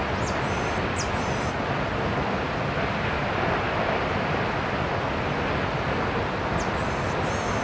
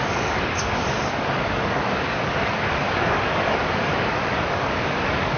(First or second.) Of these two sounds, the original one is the first